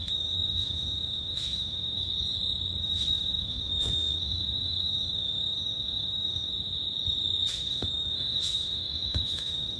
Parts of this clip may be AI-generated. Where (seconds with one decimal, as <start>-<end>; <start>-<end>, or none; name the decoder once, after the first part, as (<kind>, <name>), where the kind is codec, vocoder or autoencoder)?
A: 0.0-2.0 (autoencoder, DAC-VAE); 2.8-6.5; 7.5-9.8